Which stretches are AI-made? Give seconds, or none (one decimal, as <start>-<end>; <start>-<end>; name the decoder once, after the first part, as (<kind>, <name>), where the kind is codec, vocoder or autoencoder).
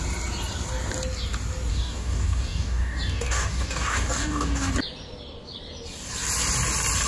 1.7-4.7 (codec, DAC)